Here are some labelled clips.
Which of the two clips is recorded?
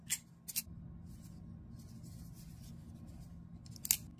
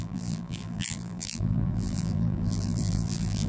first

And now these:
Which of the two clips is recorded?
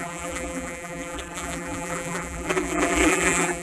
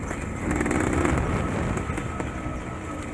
second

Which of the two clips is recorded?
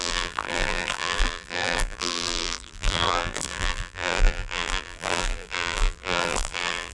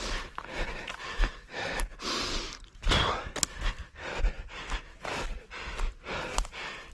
second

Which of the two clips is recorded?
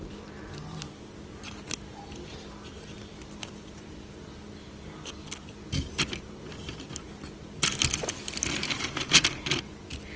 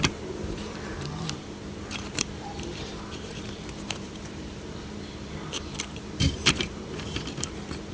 first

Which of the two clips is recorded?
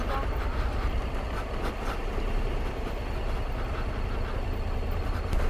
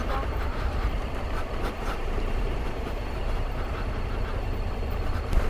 first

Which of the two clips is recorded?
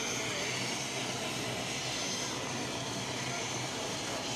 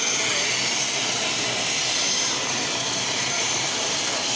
first